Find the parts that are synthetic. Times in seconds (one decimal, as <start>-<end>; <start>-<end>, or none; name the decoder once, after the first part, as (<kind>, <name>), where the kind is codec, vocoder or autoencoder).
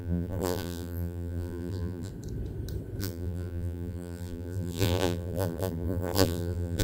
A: 0.0-2.1 (vocoder, BigVGAN v2); 3.0-6.8